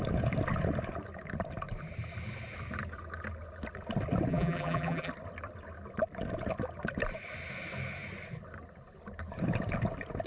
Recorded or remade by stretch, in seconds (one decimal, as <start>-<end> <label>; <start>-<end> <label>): 0.0-4.3 recorded; 4.3-5.1 remade; 5.1-10.3 recorded